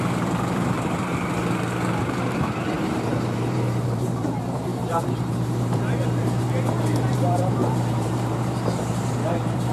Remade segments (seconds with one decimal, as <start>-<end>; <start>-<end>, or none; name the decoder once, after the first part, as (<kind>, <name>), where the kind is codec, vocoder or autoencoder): 0.0-1.1 (vocoder, BigVGAN v2); 2.0-9.7